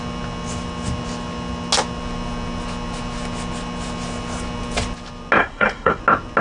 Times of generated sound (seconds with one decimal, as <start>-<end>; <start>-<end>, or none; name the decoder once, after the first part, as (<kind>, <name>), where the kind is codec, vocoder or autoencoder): 5.4-6.0 (codec, SNAC)